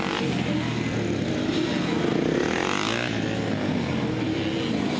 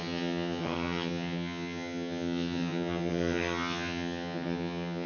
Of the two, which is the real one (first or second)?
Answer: first